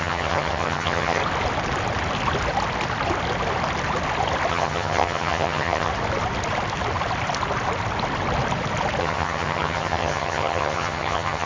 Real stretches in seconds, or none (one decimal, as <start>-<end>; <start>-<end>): 1.2-4.5; 5.9-9.0